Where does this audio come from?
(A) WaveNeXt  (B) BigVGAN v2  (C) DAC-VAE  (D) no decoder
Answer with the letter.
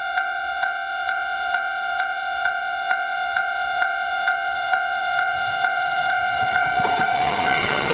A